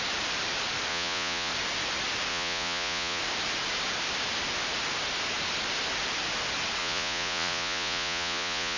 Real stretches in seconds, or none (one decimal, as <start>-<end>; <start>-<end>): 0.0-0.9; 1.5-2.3; 3.2-6.8